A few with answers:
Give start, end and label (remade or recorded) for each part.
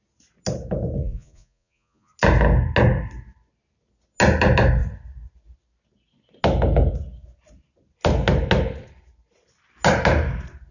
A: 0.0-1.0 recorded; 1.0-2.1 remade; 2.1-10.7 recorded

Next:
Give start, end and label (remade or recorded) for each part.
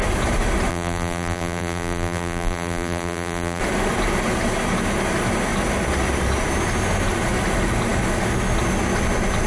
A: 0.0-0.7 recorded; 0.7-3.6 remade; 3.6-9.5 recorded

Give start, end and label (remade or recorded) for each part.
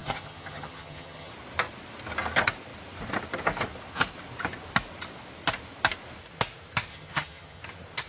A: 0.0-1.3 remade; 1.3-6.9 recorded; 6.9-7.6 remade; 7.6-8.1 recorded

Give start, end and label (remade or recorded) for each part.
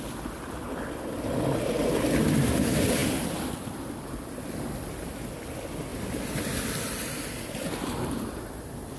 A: 0.0-9.0 recorded